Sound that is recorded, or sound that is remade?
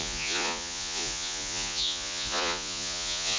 remade